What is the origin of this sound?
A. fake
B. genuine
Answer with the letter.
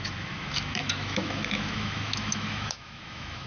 A